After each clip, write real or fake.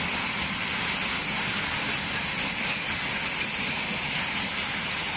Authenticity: real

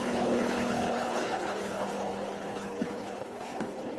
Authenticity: fake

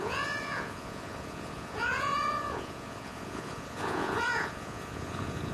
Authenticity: fake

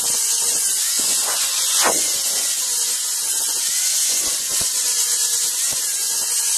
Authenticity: fake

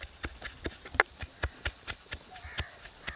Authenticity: real